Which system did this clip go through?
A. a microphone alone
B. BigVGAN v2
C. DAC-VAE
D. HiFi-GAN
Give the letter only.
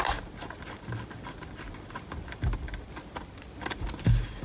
B